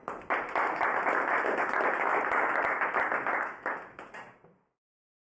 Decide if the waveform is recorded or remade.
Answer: recorded